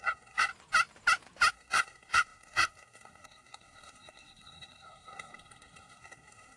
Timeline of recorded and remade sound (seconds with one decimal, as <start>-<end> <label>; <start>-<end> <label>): 0.0-0.5 remade; 0.5-1.5 recorded; 1.5-6.6 remade